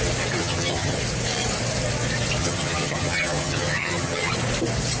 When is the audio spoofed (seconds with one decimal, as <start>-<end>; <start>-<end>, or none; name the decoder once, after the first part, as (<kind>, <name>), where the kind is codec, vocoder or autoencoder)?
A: 0.4-1.0 (vocoder, HiFi-GAN); 2.4-4.3